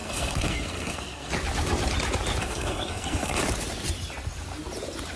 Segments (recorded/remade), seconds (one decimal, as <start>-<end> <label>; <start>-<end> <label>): 0.0-1.3 remade; 1.3-2.4 recorded; 2.4-3.4 remade; 3.4-5.2 recorded

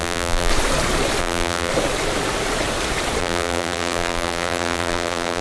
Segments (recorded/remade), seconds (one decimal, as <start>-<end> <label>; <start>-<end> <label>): 0.0-0.5 remade; 0.5-1.2 recorded; 1.2-1.7 remade; 1.7-3.2 recorded; 3.2-5.4 remade

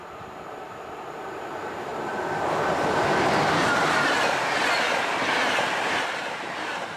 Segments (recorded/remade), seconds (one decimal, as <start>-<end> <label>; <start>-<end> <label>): 0.0-1.9 remade; 1.9-5.5 recorded; 5.5-7.0 remade

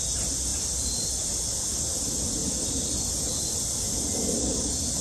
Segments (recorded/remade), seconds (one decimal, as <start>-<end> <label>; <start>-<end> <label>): 0.0-5.0 recorded

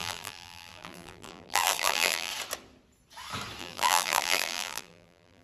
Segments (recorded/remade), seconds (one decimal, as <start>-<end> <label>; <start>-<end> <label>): 0.0-2.3 remade; 2.3-3.6 recorded; 3.6-5.4 remade

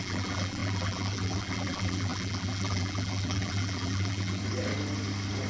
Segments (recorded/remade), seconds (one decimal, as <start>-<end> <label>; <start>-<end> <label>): 0.0-4.4 remade; 4.4-5.5 recorded